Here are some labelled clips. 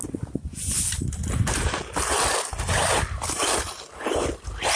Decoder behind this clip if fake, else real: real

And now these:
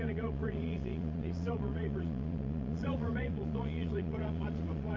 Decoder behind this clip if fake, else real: fake, vocoder, Vocos